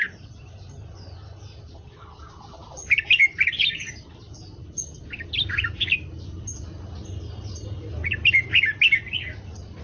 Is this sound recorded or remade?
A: recorded